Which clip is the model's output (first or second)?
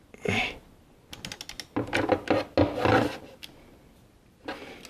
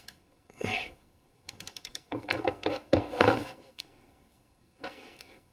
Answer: second